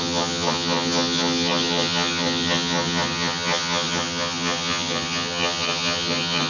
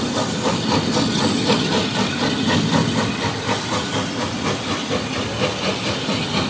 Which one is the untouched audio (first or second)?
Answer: second